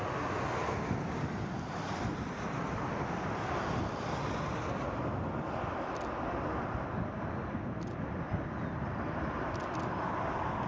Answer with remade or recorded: recorded